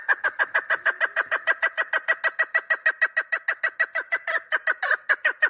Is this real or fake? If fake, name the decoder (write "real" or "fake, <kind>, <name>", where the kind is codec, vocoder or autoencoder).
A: real